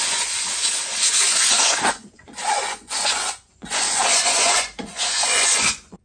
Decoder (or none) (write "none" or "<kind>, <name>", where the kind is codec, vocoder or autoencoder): vocoder, Vocos